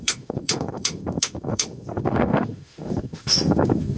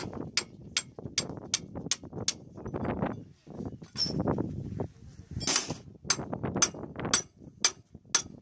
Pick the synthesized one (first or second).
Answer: first